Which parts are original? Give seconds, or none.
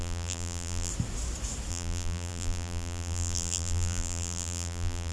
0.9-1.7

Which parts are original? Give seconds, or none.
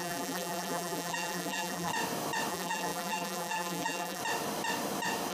1.9-2.5; 4.2-5.3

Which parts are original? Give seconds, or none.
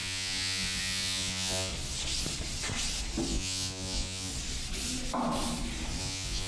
1.7-3.3; 4.3-6.0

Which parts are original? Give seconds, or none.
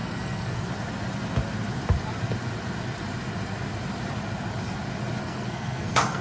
0.7-5.2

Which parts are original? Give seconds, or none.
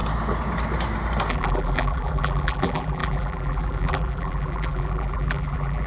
0.0-1.3